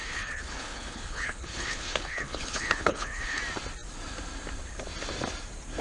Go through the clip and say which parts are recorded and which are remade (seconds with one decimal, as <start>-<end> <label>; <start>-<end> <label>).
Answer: 0.0-3.4 remade; 3.4-5.8 recorded